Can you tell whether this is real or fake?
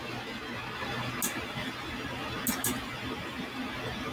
real